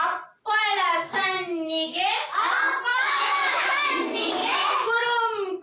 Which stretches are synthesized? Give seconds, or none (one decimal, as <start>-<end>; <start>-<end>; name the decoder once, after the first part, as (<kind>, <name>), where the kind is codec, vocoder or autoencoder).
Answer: 1.5-2.0 (autoencoder, DAC-VAE); 2.9-3.9; 4.4-4.9